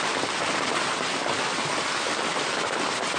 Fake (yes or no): no